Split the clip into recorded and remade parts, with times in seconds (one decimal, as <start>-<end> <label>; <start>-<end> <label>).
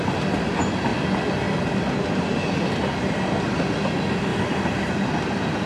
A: 0.0-5.7 recorded